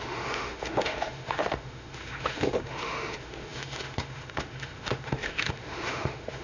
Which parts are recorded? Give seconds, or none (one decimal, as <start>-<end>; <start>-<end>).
none